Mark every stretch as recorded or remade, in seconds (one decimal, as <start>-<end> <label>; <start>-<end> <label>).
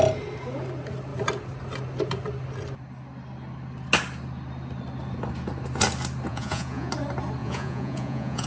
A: 0.0-6.3 recorded; 6.3-6.9 remade; 6.9-7.4 recorded; 7.4-8.5 remade